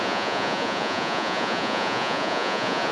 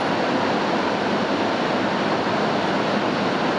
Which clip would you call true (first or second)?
second